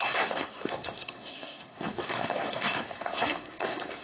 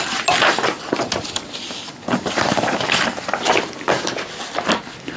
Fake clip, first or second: first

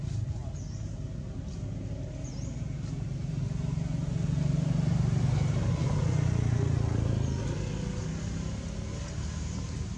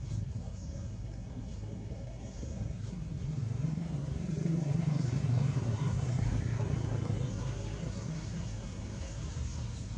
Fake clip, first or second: second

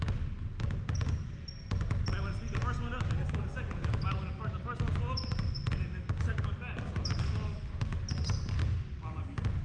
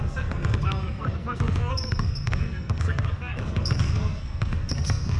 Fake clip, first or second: second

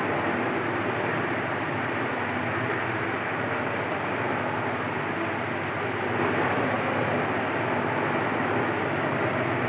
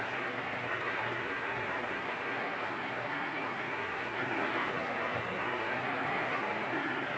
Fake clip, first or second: second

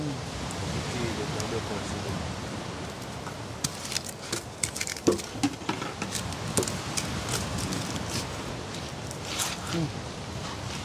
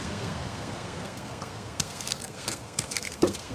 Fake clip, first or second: second